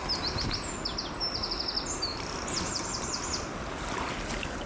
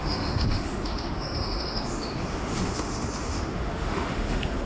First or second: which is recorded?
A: first